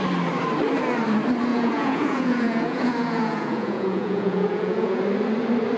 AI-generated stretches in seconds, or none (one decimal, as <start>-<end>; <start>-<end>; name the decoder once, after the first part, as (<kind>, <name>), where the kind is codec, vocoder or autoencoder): 1.5-5.0 (vocoder, Vocos)